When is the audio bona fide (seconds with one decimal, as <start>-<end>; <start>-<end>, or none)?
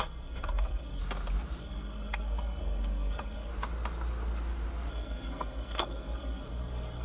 1.0-1.6; 3.5-4.9